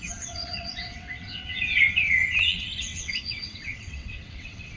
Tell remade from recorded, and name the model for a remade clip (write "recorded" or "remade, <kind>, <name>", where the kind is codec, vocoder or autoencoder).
remade, vocoder, WaveNeXt